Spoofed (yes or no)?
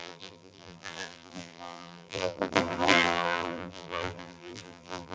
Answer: yes